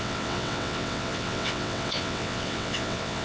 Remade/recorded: remade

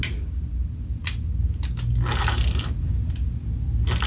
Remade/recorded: recorded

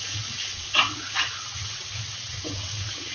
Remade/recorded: remade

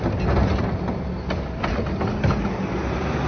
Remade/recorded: recorded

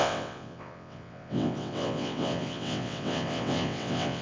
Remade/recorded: remade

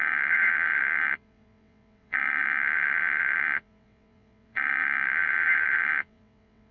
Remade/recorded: remade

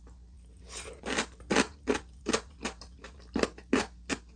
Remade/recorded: recorded